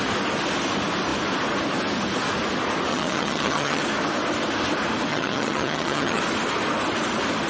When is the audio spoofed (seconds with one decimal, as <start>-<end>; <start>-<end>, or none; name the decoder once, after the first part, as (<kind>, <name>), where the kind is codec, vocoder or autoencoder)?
2.9-3.8 (vocoder, HiFi-GAN); 5.1-6.2